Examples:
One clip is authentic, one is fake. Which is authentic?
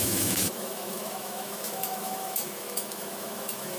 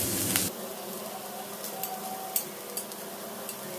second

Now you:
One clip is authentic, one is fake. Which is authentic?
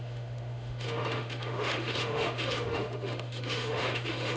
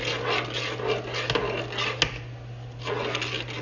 second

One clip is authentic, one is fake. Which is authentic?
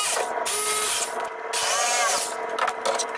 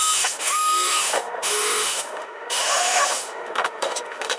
first